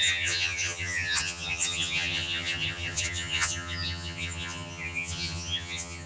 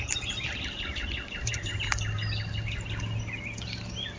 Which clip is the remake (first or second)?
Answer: first